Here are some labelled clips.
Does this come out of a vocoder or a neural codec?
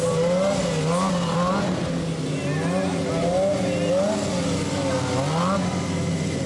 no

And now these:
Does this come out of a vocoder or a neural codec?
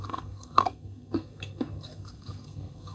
yes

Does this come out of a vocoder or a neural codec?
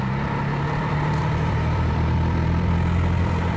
yes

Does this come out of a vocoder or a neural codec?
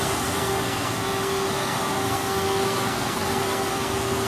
yes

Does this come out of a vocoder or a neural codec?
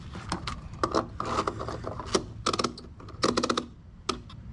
no